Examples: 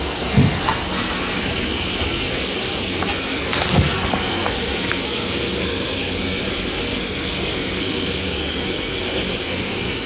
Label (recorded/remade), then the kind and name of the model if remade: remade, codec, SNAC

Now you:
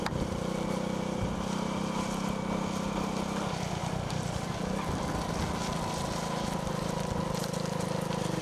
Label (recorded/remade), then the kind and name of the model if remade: recorded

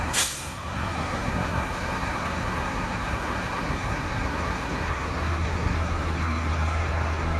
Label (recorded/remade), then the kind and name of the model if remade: remade, codec, SNAC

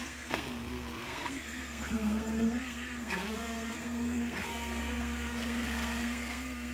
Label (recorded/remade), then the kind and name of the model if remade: remade, codec, SNAC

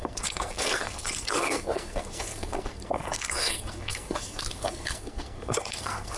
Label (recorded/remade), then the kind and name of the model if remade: remade, codec, SNAC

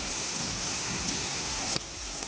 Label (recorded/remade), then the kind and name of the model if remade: remade, codec, SNAC